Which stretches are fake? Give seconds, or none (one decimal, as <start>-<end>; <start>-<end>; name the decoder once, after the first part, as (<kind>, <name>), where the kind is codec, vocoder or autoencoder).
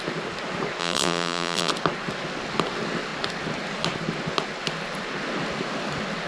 0.8-1.7 (vocoder, BigVGAN v2)